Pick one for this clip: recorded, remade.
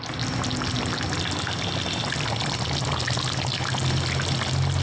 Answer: recorded